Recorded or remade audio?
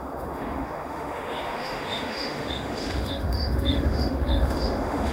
remade